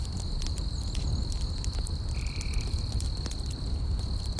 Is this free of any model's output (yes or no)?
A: yes